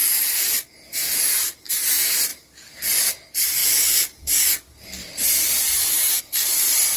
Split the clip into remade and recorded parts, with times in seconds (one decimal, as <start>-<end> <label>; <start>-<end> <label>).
0.0-1.7 recorded; 1.7-2.3 remade; 2.3-3.1 recorded; 3.1-7.0 remade